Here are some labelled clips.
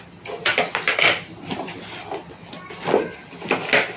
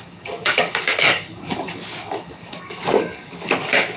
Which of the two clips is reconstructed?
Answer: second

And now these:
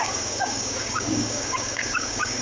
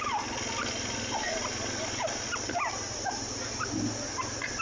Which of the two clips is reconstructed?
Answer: first